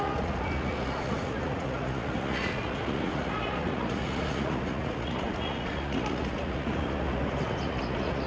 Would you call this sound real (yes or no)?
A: no